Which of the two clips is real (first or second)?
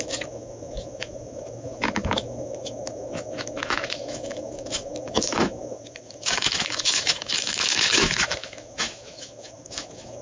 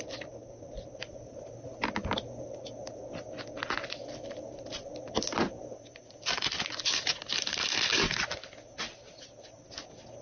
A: second